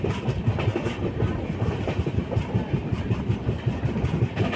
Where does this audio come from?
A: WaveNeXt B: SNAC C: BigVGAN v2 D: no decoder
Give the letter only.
D